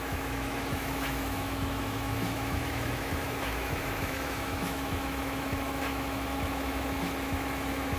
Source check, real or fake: fake